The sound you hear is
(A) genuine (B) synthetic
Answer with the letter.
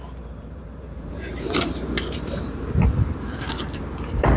B